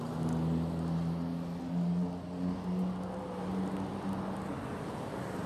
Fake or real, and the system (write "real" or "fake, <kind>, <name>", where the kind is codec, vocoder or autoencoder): real